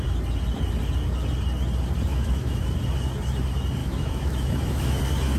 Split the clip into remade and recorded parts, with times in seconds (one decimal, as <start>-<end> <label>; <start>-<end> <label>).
0.0-2.1 recorded; 2.1-2.7 remade; 2.7-3.8 recorded; 3.8-5.0 remade; 5.0-5.4 recorded